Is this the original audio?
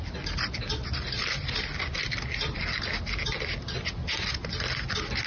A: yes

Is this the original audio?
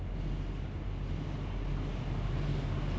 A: yes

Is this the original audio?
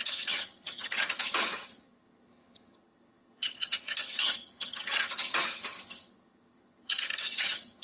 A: no